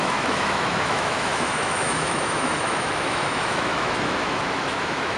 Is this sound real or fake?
fake